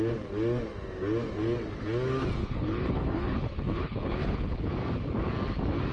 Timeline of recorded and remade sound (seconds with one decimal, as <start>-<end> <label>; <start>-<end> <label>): 0.0-2.4 recorded; 2.4-4.7 remade; 4.7-5.9 recorded